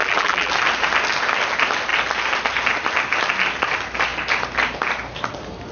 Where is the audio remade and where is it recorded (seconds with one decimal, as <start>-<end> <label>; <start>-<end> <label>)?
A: 0.0-0.5 remade; 0.5-5.7 recorded

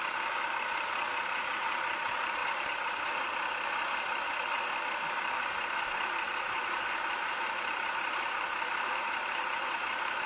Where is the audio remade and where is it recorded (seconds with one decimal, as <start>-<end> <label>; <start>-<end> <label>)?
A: 0.0-2.4 remade; 2.4-5.1 recorded; 5.1-10.3 remade

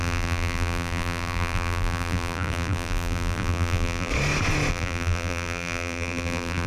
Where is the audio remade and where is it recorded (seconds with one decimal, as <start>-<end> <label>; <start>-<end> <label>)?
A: 0.0-4.1 remade; 4.1-4.7 recorded; 4.7-6.7 remade

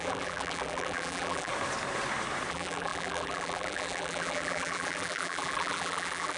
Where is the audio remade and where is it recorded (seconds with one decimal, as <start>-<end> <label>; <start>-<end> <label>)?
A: 0.0-1.5 remade; 1.5-2.5 recorded; 2.5-6.4 remade

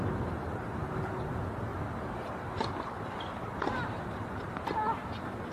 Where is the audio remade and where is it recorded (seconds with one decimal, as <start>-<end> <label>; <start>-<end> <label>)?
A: 0.0-5.5 recorded

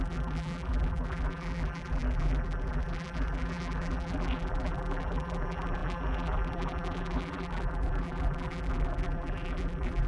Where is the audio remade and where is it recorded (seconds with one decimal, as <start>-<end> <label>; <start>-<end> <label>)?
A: 0.0-10.1 remade